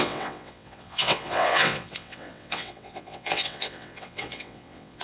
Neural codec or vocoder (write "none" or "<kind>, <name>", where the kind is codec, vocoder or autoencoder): vocoder, WaveNeXt